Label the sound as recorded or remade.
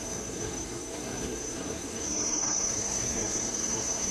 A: remade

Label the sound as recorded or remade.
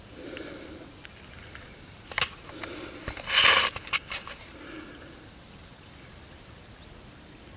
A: recorded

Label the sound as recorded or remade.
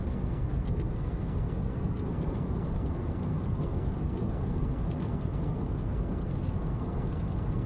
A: remade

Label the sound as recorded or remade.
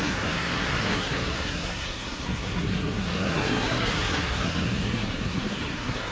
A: remade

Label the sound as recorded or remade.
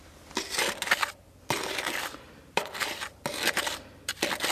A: recorded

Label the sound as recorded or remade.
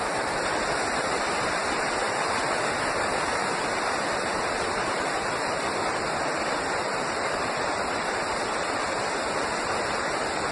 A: recorded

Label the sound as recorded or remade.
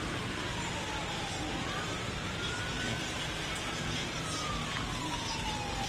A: recorded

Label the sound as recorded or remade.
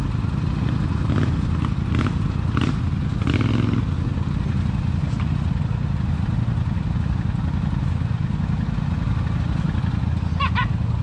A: recorded